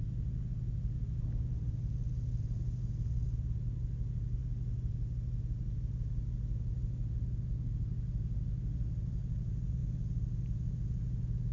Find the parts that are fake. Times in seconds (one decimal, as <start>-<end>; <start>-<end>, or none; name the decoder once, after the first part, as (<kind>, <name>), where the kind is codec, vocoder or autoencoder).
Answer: none